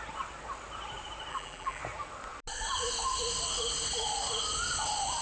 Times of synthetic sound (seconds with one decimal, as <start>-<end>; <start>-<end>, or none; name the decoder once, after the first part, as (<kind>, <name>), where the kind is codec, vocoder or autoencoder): 1.3-1.8 (vocoder, BigVGAN v2)